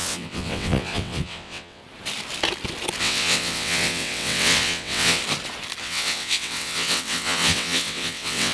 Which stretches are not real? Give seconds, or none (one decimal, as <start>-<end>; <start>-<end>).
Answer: 0.0-1.8; 3.0-5.2; 5.8-8.5